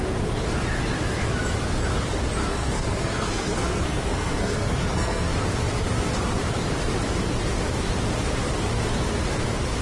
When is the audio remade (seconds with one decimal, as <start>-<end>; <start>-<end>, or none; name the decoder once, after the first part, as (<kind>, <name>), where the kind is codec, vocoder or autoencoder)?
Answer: 2.4-5.3 (codec, SNAC)